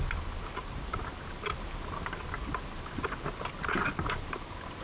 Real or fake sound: real